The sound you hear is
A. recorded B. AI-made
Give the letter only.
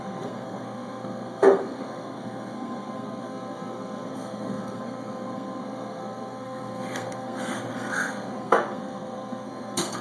B